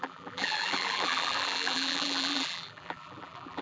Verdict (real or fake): fake